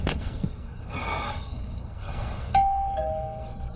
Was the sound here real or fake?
fake